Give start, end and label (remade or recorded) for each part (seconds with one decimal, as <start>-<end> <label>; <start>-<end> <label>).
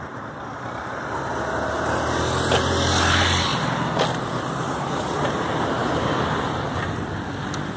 0.0-7.8 recorded